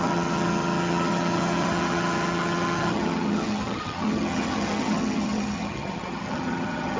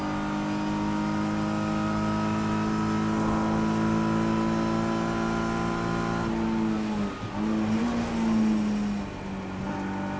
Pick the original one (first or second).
second